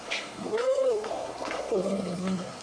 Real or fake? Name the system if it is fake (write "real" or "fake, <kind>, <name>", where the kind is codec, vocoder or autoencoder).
fake, codec, SNAC